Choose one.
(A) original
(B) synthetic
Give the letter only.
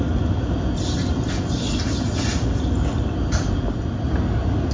A